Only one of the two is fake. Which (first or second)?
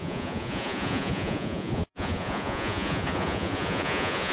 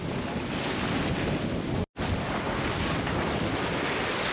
first